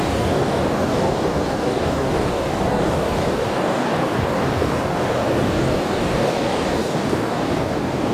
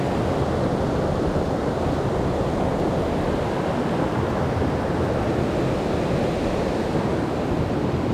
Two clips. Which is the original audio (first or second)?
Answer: second